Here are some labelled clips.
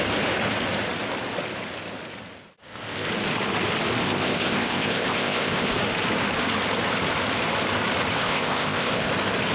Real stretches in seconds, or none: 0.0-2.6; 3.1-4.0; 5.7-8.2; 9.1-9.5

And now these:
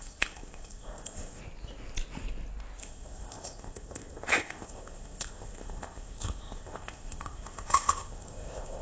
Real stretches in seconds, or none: 1.4-2.8

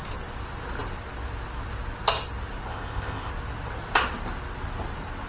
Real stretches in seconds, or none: 0.0-2.7; 3.3-5.3

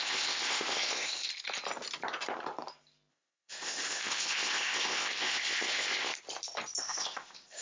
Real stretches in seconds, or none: 1.3-3.1; 6.1-6.8

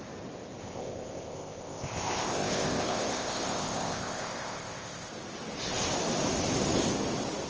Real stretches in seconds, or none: 0.0-0.6; 5.1-7.5

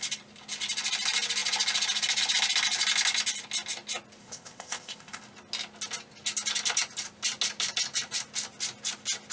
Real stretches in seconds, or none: 0.0-4.2; 5.2-9.3

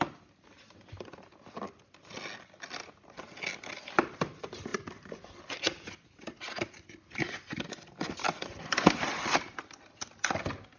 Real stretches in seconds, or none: 0.0-10.8